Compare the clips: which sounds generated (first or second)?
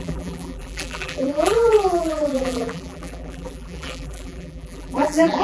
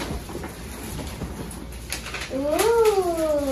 first